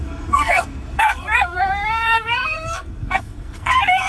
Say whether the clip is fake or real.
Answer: fake